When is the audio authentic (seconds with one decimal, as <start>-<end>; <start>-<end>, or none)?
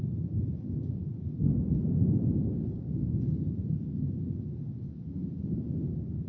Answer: 0.0-5.2